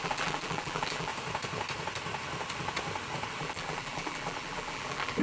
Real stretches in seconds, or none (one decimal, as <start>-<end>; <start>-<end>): 1.1-3.4